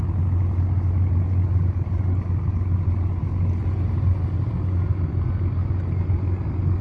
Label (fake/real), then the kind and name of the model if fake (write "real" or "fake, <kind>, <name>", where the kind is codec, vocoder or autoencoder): real